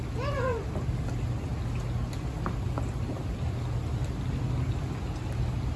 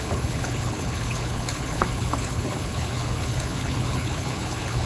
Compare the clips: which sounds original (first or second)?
first